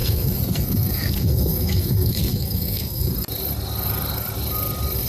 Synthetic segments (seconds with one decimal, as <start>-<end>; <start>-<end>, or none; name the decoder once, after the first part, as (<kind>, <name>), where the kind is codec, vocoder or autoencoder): 0.0-3.1 (codec, SNAC)